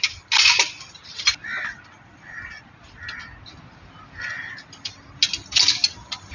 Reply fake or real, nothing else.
real